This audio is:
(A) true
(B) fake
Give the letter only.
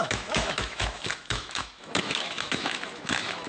B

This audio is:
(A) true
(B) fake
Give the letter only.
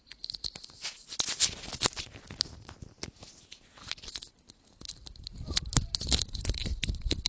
A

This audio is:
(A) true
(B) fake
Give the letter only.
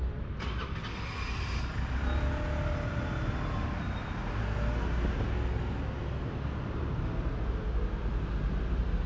A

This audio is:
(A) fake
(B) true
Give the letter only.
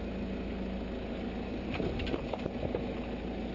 B